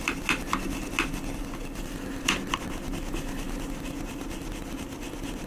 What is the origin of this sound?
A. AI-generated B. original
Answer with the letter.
B